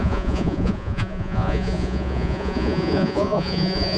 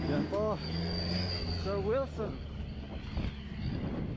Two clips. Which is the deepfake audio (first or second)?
first